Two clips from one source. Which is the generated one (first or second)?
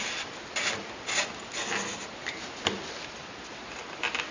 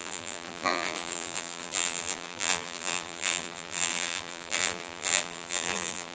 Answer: second